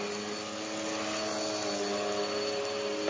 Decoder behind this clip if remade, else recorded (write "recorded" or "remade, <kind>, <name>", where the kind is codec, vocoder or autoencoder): recorded